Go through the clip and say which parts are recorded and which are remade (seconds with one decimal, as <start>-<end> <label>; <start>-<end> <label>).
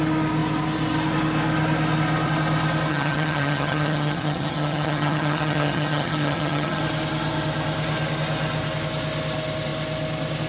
0.0-2.9 recorded; 2.9-6.8 remade; 6.8-10.5 recorded